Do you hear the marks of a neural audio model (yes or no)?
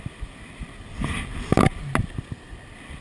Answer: yes